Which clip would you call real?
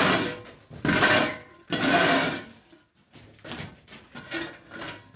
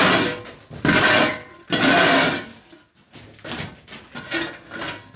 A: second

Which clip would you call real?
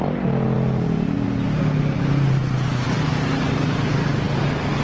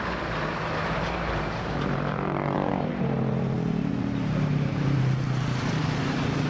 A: first